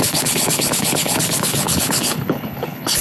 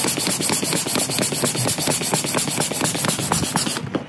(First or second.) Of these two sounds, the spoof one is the first